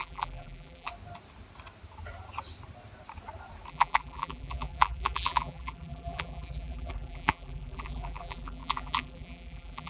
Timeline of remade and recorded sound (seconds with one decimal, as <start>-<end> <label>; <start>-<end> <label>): 0.0-0.9 remade; 0.9-3.7 recorded; 3.7-9.9 remade